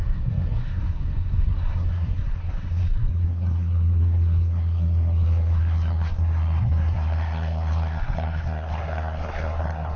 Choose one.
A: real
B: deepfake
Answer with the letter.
B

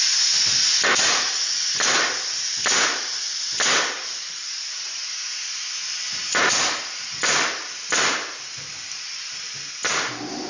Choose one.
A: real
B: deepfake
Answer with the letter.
A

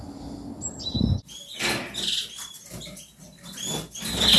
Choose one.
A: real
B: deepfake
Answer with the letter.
A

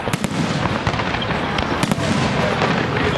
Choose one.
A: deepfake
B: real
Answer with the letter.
B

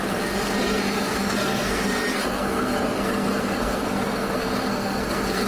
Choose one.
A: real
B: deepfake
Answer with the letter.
B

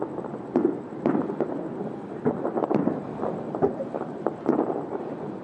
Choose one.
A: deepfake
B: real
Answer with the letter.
B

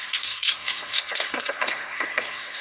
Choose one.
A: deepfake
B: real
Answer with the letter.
A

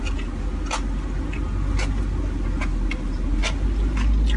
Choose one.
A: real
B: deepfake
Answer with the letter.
A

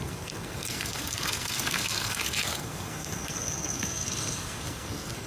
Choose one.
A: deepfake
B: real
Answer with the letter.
A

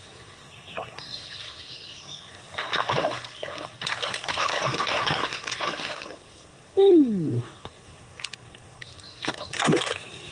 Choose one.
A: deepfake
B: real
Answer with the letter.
A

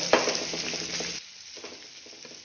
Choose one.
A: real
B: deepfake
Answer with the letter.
A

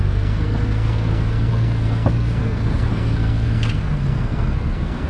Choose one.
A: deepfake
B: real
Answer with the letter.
A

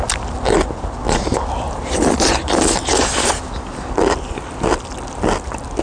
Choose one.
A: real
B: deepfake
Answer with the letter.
A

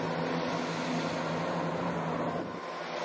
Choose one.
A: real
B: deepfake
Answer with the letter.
A